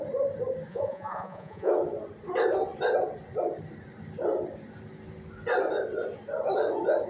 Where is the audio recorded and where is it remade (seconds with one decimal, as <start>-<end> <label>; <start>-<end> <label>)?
0.0-0.7 recorded; 0.7-1.7 remade; 1.7-7.1 recorded